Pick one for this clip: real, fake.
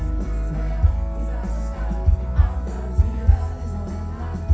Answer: real